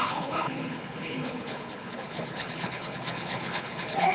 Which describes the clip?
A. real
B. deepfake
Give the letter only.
B